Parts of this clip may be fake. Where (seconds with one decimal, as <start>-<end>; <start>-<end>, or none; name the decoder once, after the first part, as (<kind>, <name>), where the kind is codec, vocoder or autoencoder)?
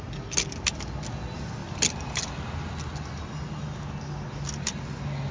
none